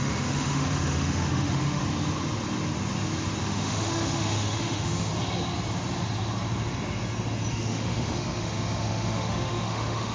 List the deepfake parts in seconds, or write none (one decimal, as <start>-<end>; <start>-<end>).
0.0-1.8; 3.4-5.1; 7.5-10.1